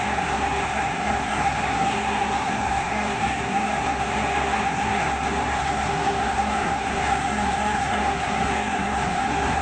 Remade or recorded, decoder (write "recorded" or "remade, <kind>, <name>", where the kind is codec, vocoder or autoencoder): remade, codec, SNAC